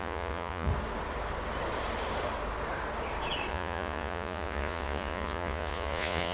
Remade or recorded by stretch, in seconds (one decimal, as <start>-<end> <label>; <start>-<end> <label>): 0.0-0.7 remade; 0.7-3.5 recorded; 3.5-6.3 remade